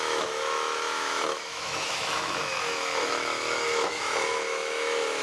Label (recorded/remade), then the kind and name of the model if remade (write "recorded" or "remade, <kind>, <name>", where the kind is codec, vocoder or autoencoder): remade, autoencoder, DAC-VAE